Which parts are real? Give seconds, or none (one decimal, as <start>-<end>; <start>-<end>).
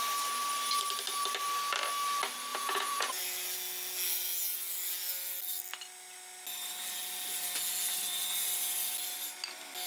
0.0-2.5; 3.2-9.9